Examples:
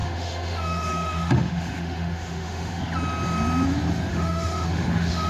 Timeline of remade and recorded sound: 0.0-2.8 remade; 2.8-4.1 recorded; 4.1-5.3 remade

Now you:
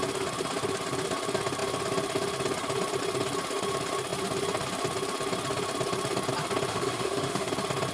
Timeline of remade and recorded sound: 0.0-6.7 recorded; 6.7-7.5 remade; 7.5-7.9 recorded

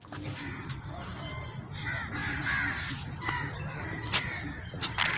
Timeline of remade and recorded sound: 0.0-5.2 recorded

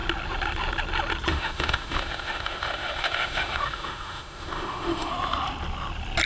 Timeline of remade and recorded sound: 0.0-1.3 recorded; 1.3-5.1 remade; 5.1-6.3 recorded

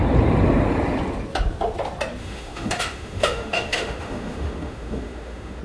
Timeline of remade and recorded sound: 0.0-2.2 recorded; 2.2-5.6 remade

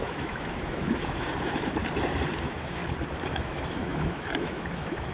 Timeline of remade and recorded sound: 0.0-1.8 remade; 1.8-2.3 recorded; 2.3-2.8 remade; 2.8-3.3 recorded; 3.3-5.1 remade

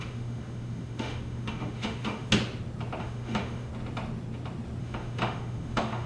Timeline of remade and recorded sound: 0.0-2.3 remade; 2.3-3.0 recorded; 3.0-3.7 remade; 3.7-4.8 recorded; 4.8-6.1 remade